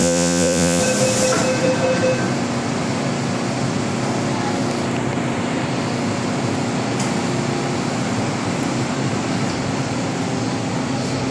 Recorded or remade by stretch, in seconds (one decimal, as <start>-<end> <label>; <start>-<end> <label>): 0.0-0.8 remade; 0.8-11.3 recorded

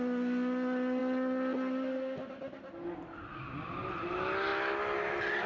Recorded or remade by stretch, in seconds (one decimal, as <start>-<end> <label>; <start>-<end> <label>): 0.0-5.5 recorded